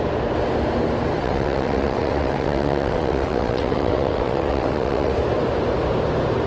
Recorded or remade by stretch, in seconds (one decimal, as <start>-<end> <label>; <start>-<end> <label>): 0.0-1.2 recorded; 1.2-5.1 remade; 5.1-6.5 recorded